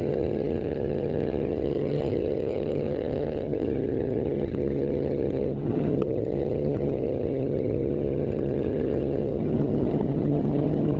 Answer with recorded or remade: remade